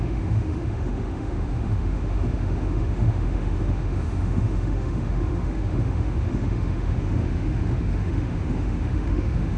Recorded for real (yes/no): no